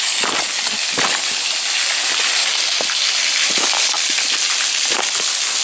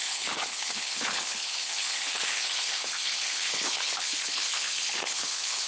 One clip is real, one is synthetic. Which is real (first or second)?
first